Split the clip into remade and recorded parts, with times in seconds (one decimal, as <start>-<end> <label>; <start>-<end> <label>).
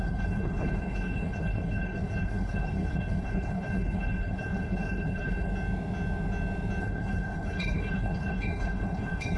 0.0-5.5 remade; 5.5-6.8 recorded; 6.8-9.4 remade